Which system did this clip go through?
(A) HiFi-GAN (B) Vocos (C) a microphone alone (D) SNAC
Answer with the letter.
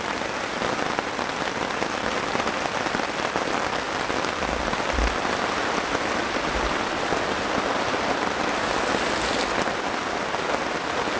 C